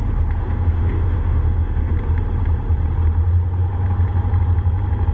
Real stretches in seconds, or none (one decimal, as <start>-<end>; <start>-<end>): 0.0-0.4; 1.9-5.1